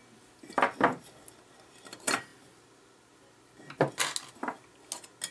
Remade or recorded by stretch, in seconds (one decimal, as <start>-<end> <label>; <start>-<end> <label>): 0.0-5.3 recorded